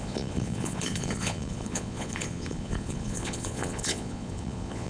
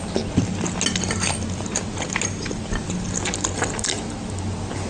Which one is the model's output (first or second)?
first